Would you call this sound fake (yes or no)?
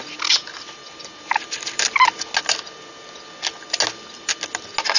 no